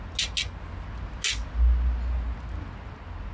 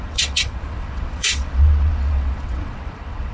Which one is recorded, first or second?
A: first